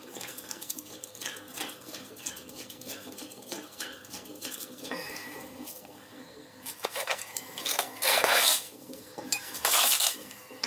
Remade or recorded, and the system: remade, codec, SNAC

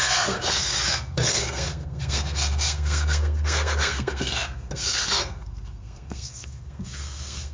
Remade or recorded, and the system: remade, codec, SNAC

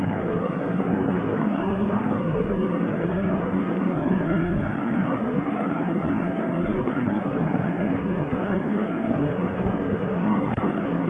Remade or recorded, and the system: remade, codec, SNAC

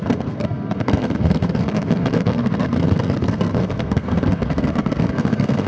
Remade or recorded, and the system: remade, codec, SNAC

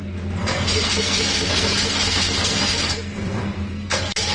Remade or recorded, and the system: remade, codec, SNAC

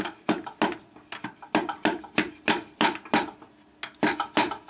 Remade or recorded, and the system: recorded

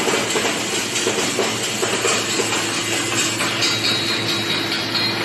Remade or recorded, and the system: recorded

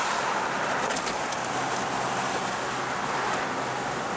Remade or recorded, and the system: recorded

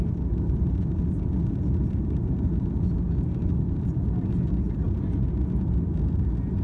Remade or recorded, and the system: recorded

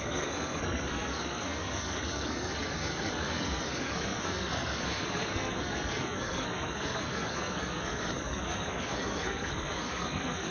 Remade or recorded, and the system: remade, codec, SNAC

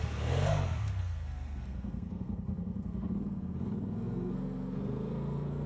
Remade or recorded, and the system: remade, codec, SNAC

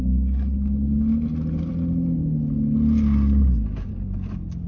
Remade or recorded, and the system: recorded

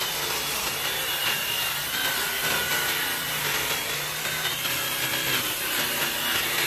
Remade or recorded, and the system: recorded